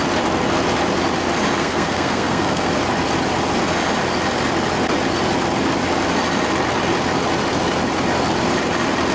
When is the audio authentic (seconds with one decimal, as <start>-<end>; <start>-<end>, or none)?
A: 0.0-1.6; 2.8-9.1